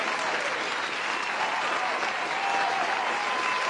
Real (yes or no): yes